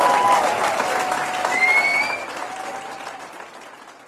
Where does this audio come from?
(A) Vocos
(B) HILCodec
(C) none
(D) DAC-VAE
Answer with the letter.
C